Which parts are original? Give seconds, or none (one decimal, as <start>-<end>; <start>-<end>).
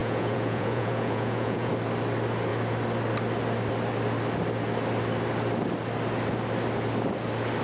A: 1.7-7.6